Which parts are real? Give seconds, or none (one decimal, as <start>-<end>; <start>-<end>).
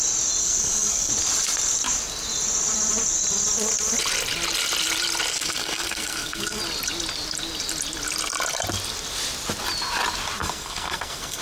0.0-0.4; 1.1-5.3; 6.6-10.4